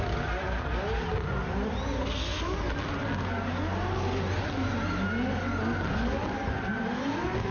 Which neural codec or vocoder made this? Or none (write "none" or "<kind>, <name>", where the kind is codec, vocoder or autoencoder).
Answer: none